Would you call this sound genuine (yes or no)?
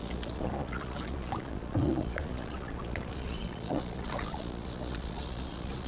no